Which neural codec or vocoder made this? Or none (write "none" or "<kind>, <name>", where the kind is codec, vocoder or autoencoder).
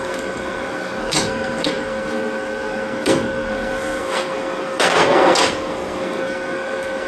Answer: codec, SNAC